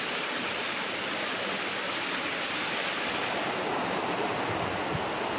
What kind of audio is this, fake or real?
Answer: real